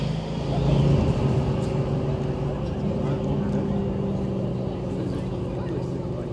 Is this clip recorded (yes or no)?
yes